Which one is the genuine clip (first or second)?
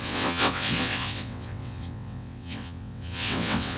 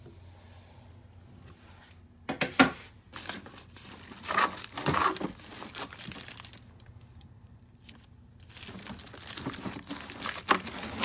second